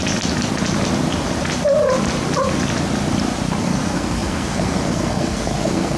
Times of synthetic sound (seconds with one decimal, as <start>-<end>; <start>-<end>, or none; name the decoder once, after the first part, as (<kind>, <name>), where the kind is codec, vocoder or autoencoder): 3.6-6.0 (codec, SNAC)